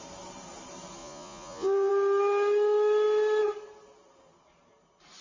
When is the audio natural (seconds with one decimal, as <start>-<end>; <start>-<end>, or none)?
0.0-1.0; 1.9-5.2